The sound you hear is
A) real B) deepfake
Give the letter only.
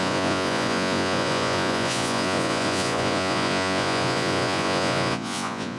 B